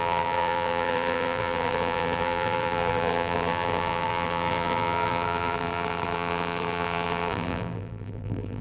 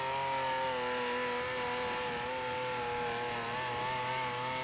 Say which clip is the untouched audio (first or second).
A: second